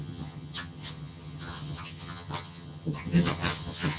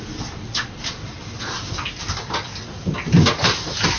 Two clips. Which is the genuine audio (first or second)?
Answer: second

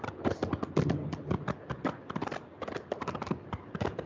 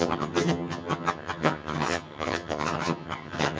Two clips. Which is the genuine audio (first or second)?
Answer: first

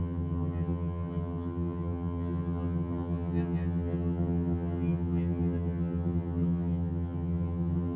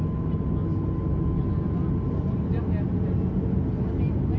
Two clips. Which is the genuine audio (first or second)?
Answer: second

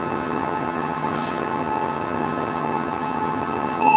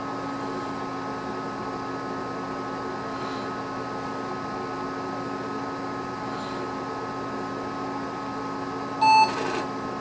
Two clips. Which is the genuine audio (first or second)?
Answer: second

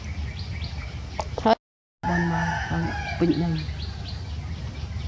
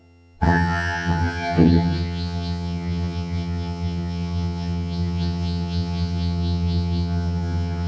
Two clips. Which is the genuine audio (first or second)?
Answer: first